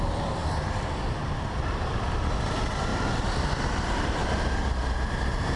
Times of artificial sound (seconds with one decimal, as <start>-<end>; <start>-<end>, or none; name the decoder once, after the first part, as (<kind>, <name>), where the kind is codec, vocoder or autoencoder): 0.0-0.4 (vocoder, BigVGAN v2); 1.7-4.2